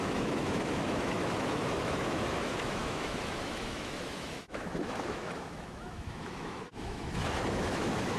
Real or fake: fake